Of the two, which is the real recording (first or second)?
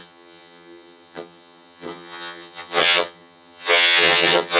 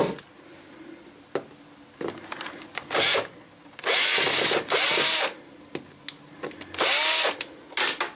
second